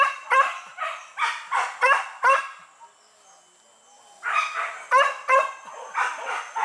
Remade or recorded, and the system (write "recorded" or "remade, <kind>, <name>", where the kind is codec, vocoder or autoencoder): recorded